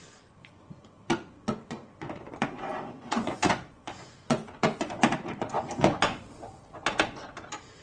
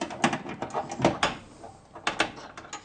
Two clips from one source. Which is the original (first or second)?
second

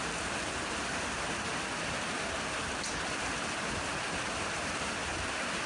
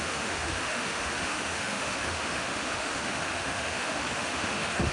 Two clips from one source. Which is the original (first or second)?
first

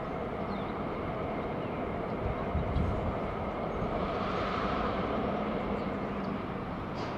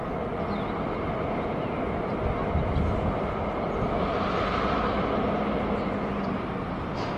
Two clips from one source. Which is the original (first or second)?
second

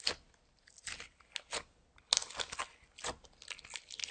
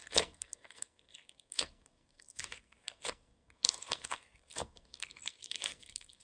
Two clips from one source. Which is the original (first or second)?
first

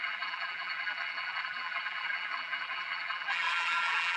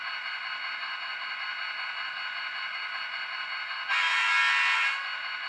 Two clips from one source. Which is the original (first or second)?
second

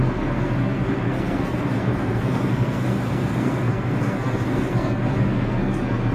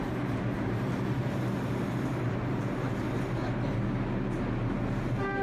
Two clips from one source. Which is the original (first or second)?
second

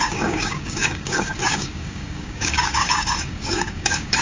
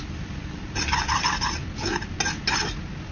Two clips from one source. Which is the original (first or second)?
second